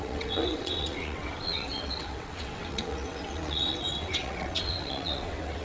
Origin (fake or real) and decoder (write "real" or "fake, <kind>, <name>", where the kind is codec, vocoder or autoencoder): fake, vocoder, WaveNeXt